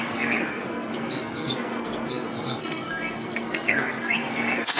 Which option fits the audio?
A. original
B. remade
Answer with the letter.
B